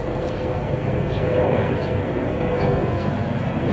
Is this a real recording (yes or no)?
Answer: no